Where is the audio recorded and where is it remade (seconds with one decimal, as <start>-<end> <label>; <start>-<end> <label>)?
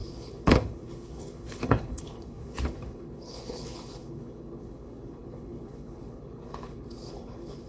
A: 0.0-7.7 remade